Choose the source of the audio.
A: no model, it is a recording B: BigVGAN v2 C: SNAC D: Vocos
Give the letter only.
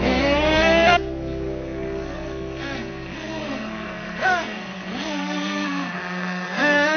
C